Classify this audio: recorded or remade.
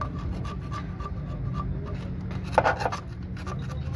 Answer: recorded